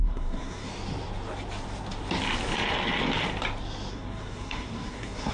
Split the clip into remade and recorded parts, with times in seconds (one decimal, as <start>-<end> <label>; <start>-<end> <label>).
0.0-0.7 remade; 0.7-3.9 recorded; 3.9-5.3 remade